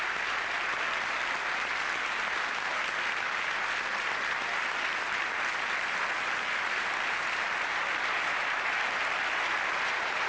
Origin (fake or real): real